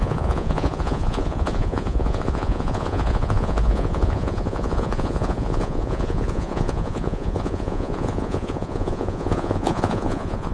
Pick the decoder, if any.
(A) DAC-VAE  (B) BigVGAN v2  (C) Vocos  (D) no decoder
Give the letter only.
C